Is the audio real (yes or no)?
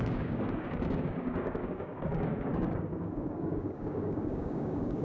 no